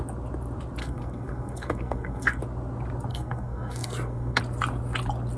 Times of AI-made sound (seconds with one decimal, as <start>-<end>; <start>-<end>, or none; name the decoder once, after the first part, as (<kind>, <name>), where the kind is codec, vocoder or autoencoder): 0.8-2.4 (codec, SNAC); 3.1-4.4